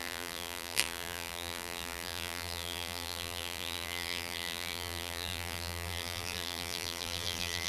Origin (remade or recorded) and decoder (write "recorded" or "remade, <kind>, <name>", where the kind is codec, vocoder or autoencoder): remade, vocoder, BigVGAN v2